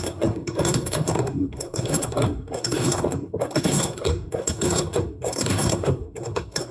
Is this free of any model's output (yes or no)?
no